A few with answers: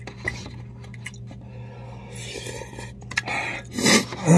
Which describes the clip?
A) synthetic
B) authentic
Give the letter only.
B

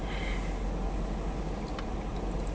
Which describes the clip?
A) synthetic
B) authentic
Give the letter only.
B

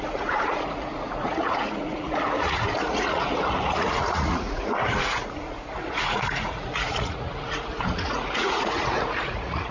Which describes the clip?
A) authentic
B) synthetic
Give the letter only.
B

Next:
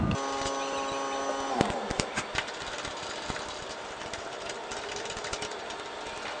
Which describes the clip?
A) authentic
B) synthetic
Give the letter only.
A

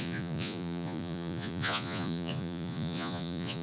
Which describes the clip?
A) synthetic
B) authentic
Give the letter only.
A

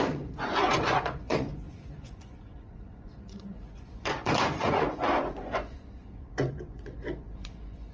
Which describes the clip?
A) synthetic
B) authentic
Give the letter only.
A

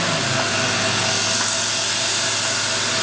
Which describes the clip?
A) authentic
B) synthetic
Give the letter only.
A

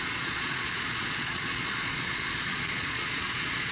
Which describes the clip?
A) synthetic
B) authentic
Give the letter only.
A